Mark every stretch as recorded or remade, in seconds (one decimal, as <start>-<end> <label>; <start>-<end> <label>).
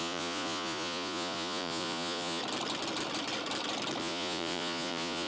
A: 0.0-2.4 remade; 2.4-4.0 recorded; 4.0-5.3 remade